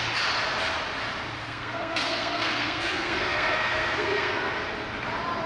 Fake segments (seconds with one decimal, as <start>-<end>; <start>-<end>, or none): 1.4-4.6